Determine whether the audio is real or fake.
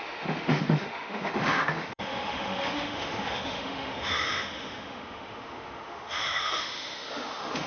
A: fake